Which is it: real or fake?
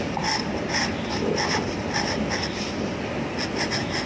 real